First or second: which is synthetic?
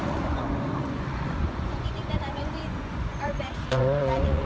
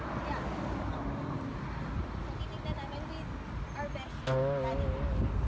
first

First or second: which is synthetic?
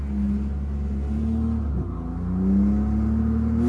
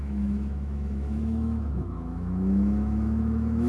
second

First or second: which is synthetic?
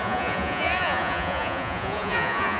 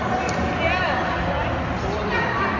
first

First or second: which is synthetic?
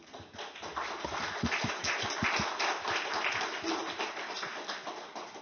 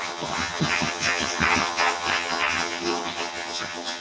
second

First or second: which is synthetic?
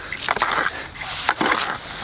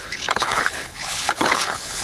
second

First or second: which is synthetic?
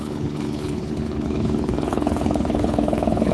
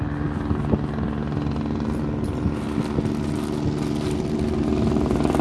first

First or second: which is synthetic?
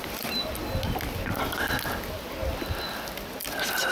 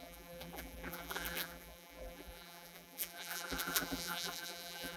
second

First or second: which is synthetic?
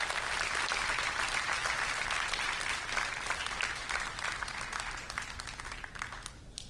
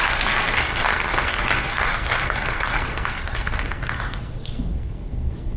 second